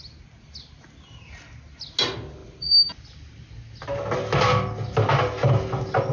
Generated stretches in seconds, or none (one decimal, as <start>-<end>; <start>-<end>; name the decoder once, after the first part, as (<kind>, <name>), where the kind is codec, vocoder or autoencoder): none